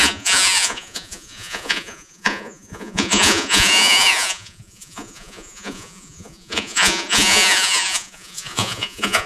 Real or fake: fake